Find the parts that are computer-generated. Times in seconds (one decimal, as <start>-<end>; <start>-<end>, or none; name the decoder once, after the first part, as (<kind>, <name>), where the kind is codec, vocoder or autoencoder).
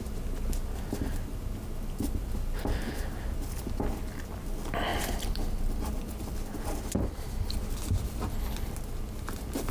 2.2-3.8 (vocoder, BigVGAN v2); 4.9-8.8